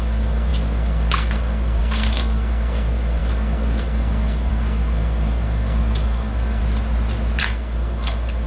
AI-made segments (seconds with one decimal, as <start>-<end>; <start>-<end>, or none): 0.0-6.6; 7.4-8.5